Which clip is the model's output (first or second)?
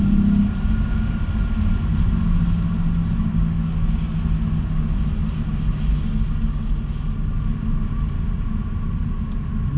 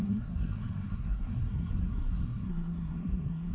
second